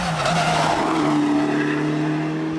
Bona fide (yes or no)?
yes